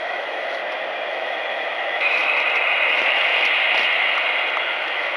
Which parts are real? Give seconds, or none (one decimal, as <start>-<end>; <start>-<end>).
0.6-1.1; 2.2-2.9; 3.3-4.6